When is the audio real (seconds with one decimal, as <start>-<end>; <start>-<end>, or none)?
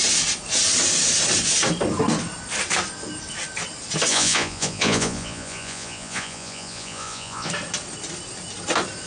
0.0-4.1; 7.5-9.1